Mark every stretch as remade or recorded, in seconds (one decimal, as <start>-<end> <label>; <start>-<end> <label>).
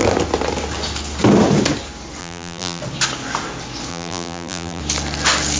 0.0-2.2 recorded; 2.2-2.8 remade; 2.8-3.9 recorded; 3.9-4.8 remade; 4.8-5.6 recorded